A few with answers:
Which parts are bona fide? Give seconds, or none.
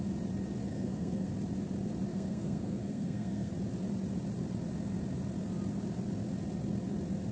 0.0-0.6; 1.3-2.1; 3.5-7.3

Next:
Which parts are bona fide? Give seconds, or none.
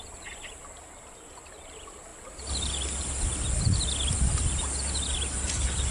0.0-5.9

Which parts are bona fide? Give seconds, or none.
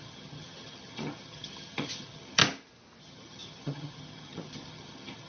2.4-3.0